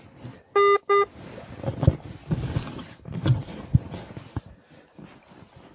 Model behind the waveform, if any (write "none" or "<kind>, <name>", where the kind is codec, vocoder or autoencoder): none